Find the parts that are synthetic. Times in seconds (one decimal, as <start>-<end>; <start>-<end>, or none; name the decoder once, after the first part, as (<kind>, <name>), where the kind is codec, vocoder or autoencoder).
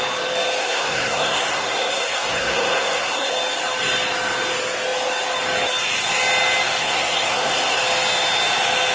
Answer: 0.6-3.3 (codec, SNAC); 6.8-7.8